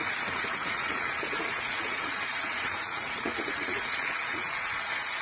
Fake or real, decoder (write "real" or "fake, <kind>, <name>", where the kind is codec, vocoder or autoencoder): fake, vocoder, Vocos